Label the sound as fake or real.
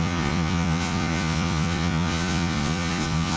fake